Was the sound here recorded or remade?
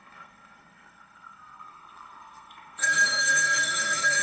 remade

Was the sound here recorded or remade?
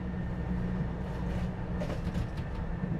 recorded